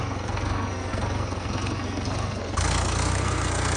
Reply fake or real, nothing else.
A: fake